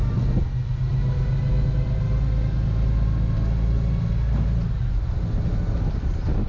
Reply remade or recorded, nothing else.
recorded